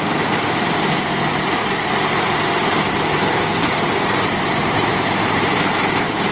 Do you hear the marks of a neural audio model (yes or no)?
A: yes